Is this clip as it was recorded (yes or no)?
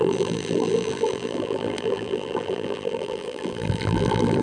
no